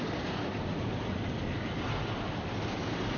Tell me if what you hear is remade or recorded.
recorded